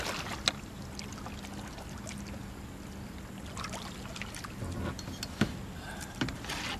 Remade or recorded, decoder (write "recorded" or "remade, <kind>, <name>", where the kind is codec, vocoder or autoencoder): recorded